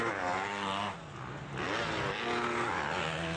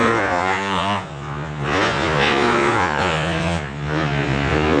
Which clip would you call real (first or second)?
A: first